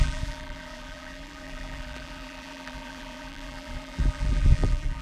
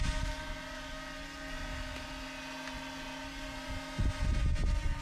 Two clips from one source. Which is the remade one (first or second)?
first